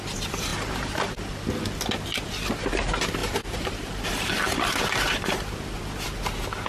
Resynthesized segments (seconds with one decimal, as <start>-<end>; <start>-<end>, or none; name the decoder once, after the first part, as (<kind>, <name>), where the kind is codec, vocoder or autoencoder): 3.2-5.1 (vocoder, BigVGAN v2)